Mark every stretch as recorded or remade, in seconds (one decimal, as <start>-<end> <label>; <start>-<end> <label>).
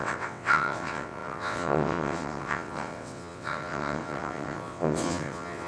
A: 0.0-5.7 remade